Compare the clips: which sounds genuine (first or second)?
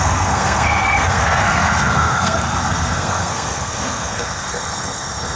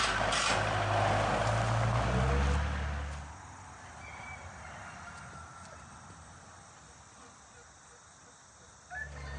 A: second